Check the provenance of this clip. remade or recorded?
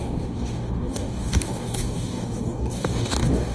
remade